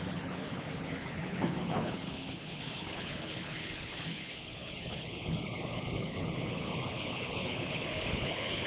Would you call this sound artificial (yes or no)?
yes